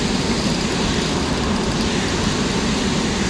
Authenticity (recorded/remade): recorded